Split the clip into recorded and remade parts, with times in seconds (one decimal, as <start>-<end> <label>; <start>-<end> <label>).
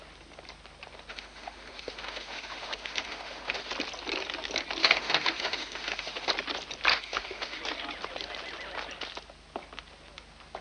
0.0-1.1 recorded; 1.1-3.7 remade; 3.7-4.8 recorded; 4.8-6.3 remade; 6.3-6.9 recorded; 6.9-7.6 remade; 7.6-10.6 recorded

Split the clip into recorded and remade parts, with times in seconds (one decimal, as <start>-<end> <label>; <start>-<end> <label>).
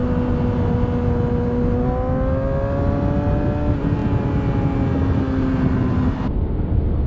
0.0-7.1 recorded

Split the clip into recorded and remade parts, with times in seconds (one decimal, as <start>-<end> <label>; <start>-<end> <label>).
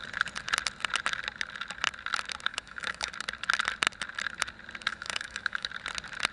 0.0-2.5 recorded; 2.5-3.1 remade; 3.1-4.9 recorded; 4.9-5.7 remade; 5.7-6.3 recorded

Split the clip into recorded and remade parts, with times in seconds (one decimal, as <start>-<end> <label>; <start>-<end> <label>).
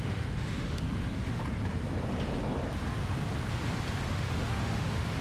0.0-1.4 remade; 1.4-4.1 recorded; 4.1-5.2 remade